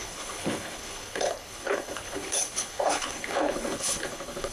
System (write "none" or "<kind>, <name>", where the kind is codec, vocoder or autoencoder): codec, HILCodec